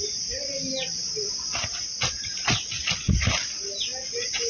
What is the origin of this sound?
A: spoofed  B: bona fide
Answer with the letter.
B